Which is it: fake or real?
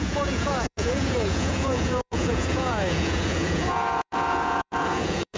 fake